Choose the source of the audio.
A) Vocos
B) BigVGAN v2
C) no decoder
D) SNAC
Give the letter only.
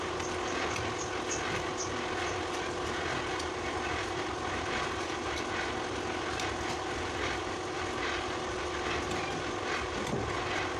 C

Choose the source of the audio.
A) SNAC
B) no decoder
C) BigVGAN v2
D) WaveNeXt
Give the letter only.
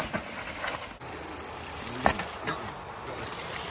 B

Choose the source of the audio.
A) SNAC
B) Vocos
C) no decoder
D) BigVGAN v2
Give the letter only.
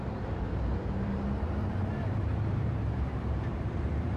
D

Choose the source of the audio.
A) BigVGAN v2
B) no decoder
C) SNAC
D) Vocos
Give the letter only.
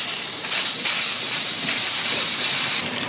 A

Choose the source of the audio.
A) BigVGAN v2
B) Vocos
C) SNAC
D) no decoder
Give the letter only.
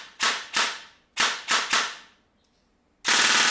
D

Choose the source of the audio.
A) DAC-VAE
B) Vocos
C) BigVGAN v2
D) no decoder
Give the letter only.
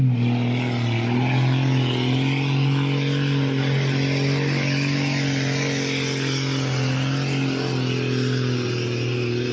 D